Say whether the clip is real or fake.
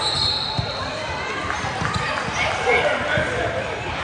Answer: real